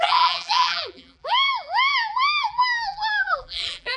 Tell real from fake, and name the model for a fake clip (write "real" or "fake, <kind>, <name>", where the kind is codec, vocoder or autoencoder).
fake, vocoder, BigVGAN v2